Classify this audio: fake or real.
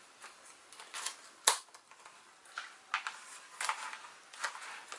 real